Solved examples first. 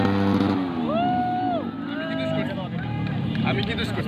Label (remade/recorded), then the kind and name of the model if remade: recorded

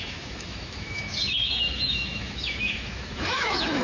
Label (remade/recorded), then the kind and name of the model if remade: remade, autoencoder, DAC-VAE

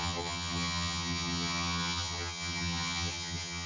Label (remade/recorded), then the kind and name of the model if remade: remade, vocoder, HiFi-GAN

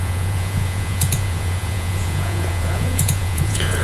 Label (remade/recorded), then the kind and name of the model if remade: remade, vocoder, Vocos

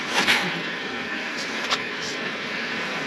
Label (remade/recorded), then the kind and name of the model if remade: remade, codec, SNAC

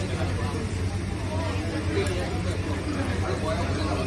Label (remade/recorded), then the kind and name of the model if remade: recorded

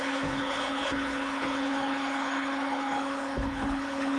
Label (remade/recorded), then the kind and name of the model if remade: remade, codec, HILCodec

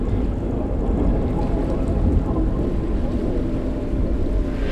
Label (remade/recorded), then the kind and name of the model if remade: recorded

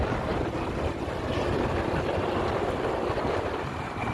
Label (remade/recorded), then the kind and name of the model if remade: recorded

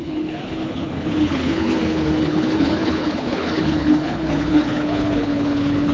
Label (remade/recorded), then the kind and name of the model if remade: remade, codec, HILCodec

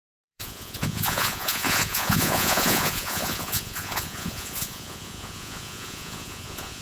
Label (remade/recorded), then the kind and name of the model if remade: remade, vocoder, Vocos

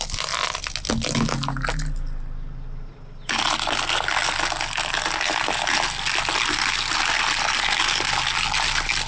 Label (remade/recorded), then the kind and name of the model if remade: recorded